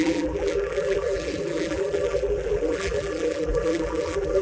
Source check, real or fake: fake